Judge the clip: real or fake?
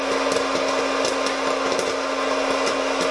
real